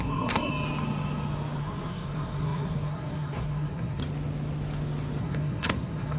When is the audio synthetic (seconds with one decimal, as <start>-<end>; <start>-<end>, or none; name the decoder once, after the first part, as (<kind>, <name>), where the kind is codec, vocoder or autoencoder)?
0.0-0.5 (codec, SNAC); 1.6-4.0; 5.2-6.2